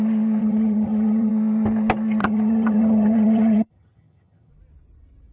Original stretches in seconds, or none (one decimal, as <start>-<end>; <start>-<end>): 0.0-0.4; 1.3-2.2; 4.5-5.3